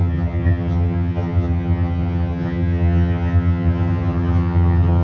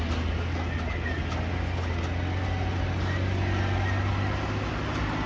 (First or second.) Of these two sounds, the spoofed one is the first